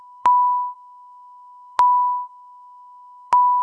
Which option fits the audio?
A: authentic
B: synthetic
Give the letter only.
B